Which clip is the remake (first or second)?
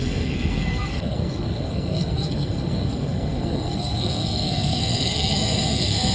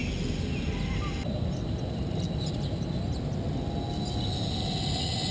first